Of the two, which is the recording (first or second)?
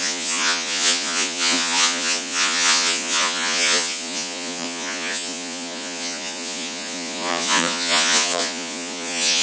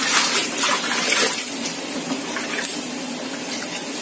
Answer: second